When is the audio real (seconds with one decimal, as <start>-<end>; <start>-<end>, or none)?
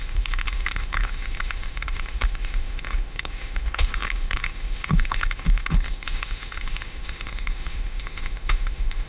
none